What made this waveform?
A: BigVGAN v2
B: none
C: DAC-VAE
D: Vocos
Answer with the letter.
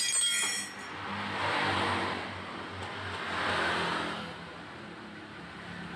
B